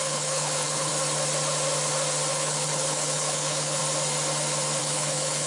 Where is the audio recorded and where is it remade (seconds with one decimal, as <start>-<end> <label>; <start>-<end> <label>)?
0.0-0.9 remade; 0.9-2.3 recorded; 2.3-3.8 remade; 3.8-4.8 recorded; 4.8-5.5 remade